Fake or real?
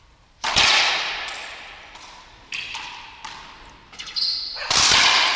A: real